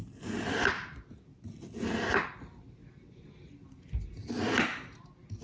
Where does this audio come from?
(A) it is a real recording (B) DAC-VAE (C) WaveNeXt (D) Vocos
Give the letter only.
A